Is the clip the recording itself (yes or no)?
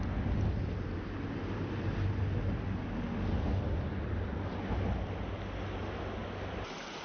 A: yes